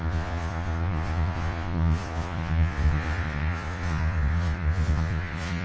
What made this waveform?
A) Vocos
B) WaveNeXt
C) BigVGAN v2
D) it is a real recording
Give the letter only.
A